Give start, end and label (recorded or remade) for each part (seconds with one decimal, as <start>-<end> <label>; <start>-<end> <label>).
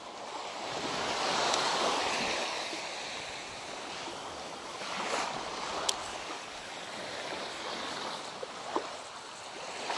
0.0-0.5 recorded; 0.5-2.8 remade; 2.8-4.1 recorded; 4.1-5.0 remade; 5.0-6.0 recorded; 6.0-8.2 remade; 8.2-10.0 recorded